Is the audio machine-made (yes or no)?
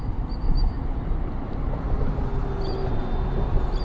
no